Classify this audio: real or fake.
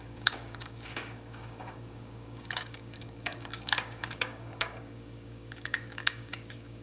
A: fake